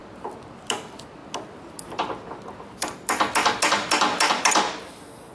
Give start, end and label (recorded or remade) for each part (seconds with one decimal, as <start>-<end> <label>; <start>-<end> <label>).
0.0-5.3 recorded